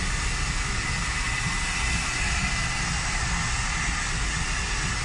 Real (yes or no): yes